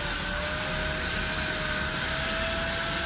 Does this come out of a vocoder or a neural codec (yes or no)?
no